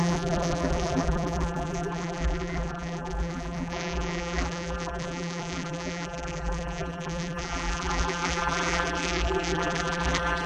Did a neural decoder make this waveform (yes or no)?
yes